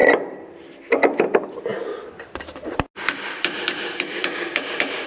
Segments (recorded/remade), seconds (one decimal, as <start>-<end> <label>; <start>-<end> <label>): 0.0-0.5 remade; 0.5-5.1 recorded

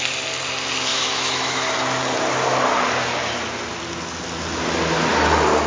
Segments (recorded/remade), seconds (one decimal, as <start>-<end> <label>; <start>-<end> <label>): 0.0-0.9 recorded; 0.9-1.7 remade; 1.7-5.7 recorded

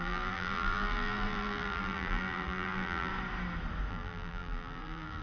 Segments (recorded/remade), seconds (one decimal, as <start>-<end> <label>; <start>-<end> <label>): 0.0-3.1 remade; 3.1-3.9 recorded; 3.9-5.2 remade

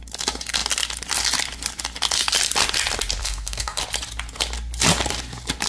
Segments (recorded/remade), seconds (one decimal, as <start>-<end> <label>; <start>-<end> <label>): 0.0-3.2 recorded; 3.2-3.8 remade; 3.8-5.7 recorded

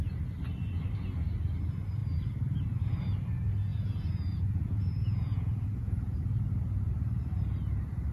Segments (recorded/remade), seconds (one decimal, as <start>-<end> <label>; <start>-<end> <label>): 0.0-3.7 recorded; 3.7-6.2 remade; 6.2-8.1 recorded

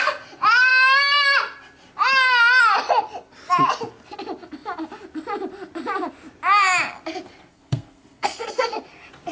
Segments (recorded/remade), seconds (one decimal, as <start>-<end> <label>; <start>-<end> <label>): 0.0-7.5 recorded; 7.5-8.8 remade; 8.8-9.3 recorded